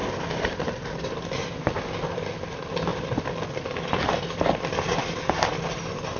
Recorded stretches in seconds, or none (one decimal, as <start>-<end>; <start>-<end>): 0.0-6.2